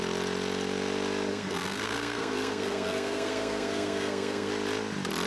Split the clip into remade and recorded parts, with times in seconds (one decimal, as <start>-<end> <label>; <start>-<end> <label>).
0.0-1.3 recorded; 1.3-4.5 remade; 4.5-5.3 recorded